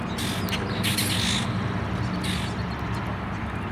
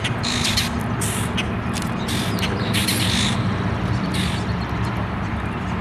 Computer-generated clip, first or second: second